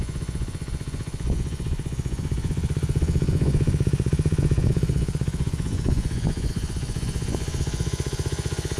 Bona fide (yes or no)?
no